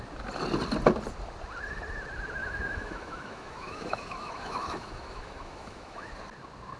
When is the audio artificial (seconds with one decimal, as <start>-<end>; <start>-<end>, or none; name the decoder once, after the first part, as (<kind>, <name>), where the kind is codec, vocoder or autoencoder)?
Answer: 2.4-6.1 (autoencoder, DAC-VAE)